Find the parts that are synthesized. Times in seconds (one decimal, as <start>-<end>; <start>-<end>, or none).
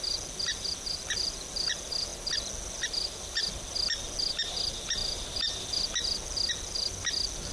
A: none